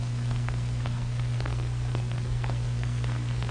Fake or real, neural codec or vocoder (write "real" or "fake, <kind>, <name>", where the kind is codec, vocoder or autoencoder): fake, codec, SNAC